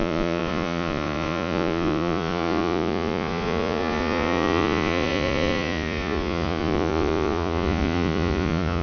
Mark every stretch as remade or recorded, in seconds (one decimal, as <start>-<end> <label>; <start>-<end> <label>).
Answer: 0.0-8.8 remade